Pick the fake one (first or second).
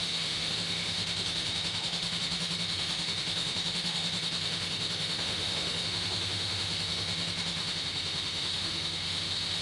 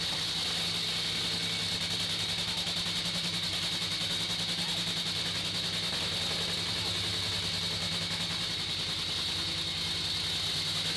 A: first